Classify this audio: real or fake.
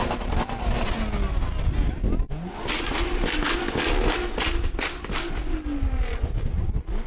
real